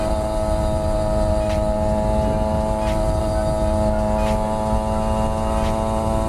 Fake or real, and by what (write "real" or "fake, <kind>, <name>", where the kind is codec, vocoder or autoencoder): real